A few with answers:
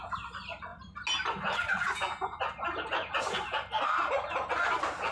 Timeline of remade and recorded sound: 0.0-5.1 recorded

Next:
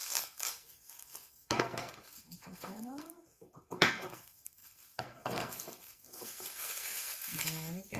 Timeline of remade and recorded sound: 0.0-8.0 remade